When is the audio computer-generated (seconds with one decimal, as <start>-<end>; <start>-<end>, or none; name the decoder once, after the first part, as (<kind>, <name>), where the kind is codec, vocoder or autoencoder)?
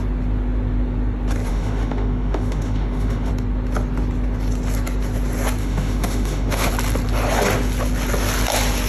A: 1.5-3.3 (autoencoder, DAC-VAE); 5.6-6.7